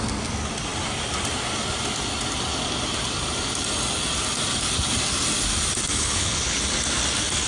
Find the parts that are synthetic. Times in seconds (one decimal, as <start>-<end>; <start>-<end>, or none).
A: 5.9-6.6